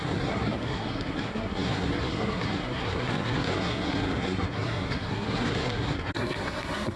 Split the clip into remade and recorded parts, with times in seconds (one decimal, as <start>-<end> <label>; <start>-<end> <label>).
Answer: 0.0-7.0 remade